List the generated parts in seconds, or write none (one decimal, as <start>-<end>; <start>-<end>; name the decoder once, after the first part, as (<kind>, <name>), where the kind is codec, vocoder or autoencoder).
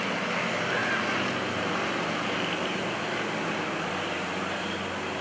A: none